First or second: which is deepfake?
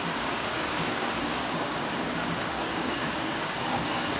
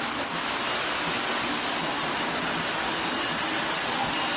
first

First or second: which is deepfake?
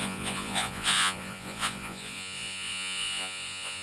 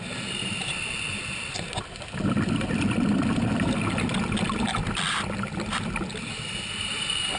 first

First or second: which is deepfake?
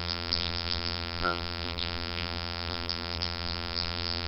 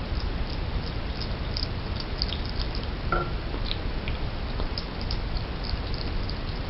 first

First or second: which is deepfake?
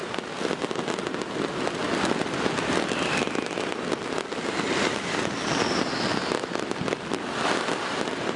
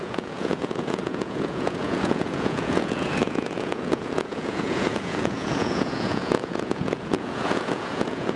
second